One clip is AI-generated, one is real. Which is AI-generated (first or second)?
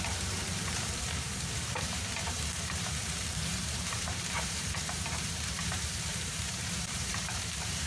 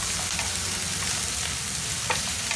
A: first